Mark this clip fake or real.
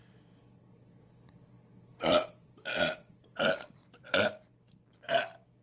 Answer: real